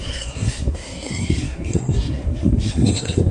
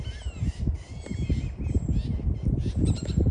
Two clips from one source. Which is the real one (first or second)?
second